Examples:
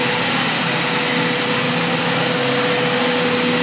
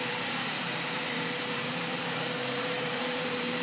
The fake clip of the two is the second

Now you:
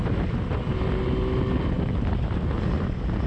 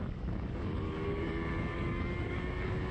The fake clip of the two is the second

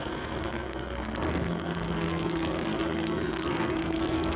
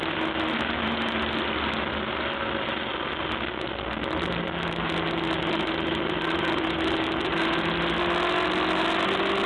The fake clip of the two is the first